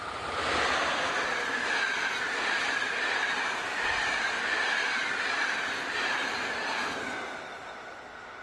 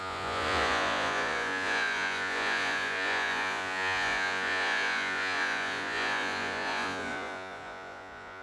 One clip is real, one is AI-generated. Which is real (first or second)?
first